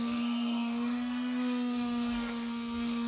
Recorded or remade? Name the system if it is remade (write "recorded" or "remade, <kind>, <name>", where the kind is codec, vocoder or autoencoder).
remade, codec, SNAC